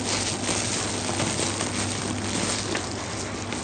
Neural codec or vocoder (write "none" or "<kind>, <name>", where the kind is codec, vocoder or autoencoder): none